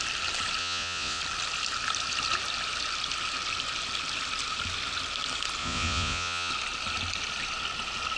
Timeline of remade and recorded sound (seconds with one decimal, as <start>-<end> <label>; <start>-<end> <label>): 0.0-0.6 recorded; 0.6-1.2 remade; 1.2-5.6 recorded; 5.6-6.5 remade; 6.5-8.2 recorded

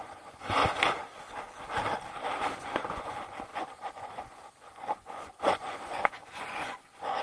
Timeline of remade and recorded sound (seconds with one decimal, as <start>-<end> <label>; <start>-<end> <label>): 0.0-0.6 remade; 0.6-2.6 recorded; 2.6-7.2 remade

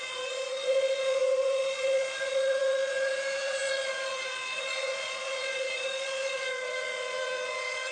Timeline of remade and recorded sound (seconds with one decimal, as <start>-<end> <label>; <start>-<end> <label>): 0.0-7.9 remade

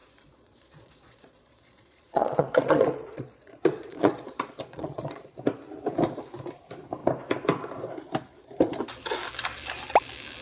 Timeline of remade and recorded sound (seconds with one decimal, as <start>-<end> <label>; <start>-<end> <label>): 0.0-5.3 remade; 5.3-10.4 recorded

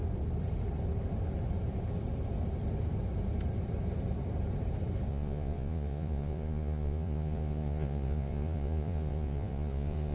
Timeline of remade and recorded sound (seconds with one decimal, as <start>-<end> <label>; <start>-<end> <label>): 0.0-5.1 recorded; 5.1-10.1 remade

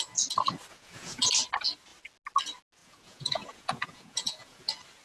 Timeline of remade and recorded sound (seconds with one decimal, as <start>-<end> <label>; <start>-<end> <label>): 0.0-0.7 recorded; 0.7-1.3 remade; 1.3-2.8 recorded; 2.8-4.6 remade; 4.6-5.0 recorded